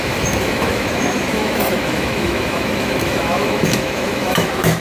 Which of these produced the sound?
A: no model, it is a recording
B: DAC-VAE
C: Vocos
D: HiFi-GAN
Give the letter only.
B